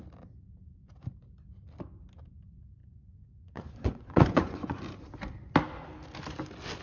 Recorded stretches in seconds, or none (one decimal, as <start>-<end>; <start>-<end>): 0.0-2.8; 4.8-6.8